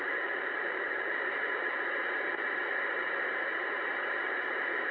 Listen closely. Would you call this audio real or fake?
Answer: fake